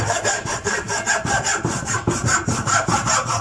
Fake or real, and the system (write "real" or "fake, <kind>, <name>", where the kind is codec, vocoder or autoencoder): fake, vocoder, BigVGAN v2